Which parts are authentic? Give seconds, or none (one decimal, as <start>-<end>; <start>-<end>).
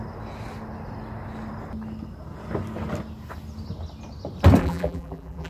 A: 0.0-4.6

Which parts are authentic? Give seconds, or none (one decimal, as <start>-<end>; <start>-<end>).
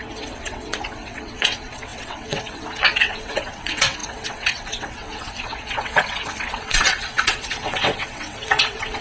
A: none